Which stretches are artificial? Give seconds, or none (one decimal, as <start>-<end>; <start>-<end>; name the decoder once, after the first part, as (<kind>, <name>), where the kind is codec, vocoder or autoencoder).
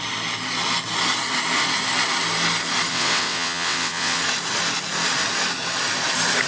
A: 2.9-4.2 (vocoder, WaveNeXt)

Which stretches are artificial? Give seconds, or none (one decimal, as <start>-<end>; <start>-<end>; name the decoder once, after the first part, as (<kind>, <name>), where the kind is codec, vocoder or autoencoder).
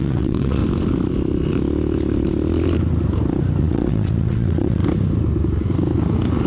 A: 0.0-0.6 (vocoder, WaveNeXt); 3.6-4.8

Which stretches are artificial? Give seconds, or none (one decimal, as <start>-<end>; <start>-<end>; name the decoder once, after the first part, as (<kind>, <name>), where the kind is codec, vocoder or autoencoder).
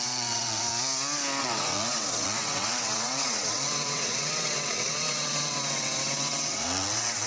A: 0.0-0.7 (vocoder, WaveNeXt); 1.4-7.3